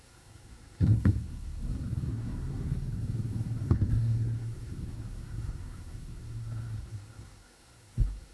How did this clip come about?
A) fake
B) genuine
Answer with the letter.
A